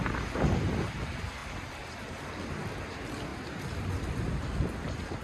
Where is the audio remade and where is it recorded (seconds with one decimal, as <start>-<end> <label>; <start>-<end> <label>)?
0.0-1.4 recorded; 1.4-2.2 remade; 2.2-5.2 recorded